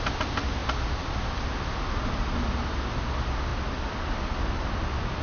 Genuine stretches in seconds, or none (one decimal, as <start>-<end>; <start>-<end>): 0.0-5.2